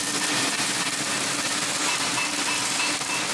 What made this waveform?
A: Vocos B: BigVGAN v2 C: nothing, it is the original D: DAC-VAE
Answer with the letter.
C